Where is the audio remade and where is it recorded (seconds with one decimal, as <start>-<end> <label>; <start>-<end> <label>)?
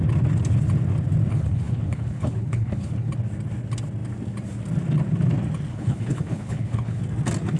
0.0-1.3 recorded; 1.3-3.1 remade; 3.1-5.7 recorded; 5.7-7.0 remade; 7.0-7.6 recorded